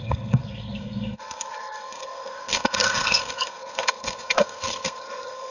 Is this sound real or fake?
fake